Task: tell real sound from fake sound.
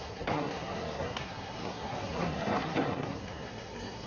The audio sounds fake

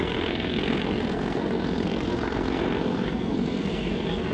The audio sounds fake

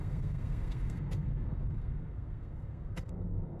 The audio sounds fake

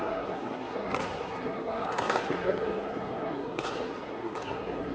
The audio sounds fake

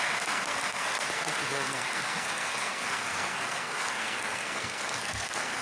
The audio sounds fake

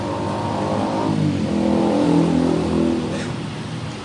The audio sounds real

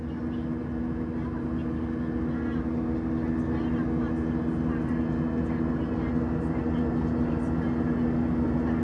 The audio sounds real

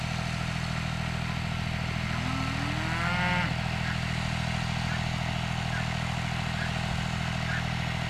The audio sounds real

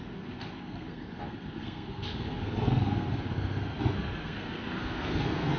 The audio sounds fake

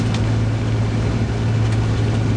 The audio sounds real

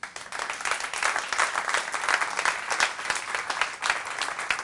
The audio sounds real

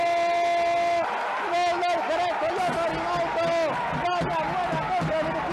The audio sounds real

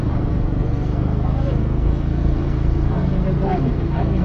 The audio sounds fake